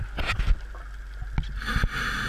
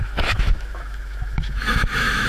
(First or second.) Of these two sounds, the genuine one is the first